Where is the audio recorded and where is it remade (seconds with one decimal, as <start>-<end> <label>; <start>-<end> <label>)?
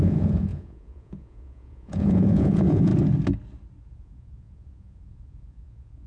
0.0-2.9 remade; 2.9-3.8 recorded; 3.8-6.1 remade